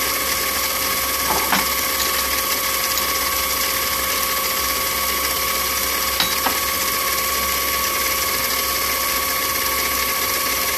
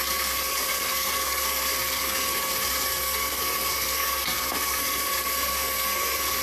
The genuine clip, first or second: first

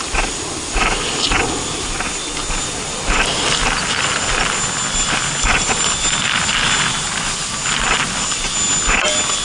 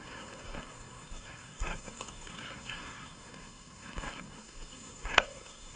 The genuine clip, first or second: first